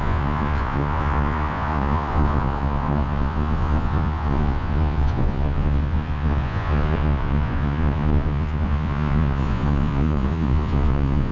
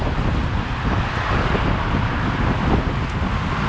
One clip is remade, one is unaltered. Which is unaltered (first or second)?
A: second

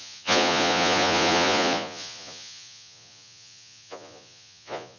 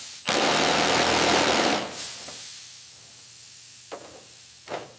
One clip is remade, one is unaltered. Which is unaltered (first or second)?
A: second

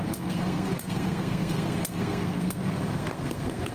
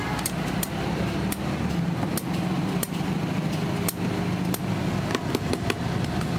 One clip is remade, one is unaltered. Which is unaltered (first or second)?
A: second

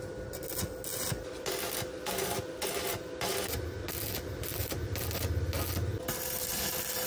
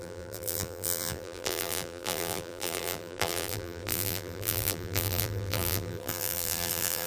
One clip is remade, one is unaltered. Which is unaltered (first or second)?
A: first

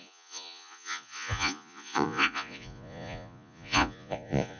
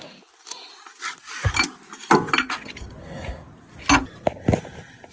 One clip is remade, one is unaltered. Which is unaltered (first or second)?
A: second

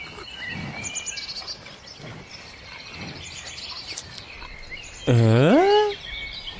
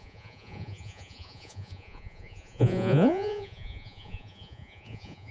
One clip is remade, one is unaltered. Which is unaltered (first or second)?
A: first